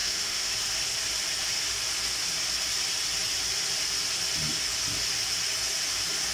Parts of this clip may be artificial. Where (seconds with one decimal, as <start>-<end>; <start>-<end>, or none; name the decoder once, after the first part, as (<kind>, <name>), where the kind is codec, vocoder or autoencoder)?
0.0-0.5 (autoencoder, DAC-VAE)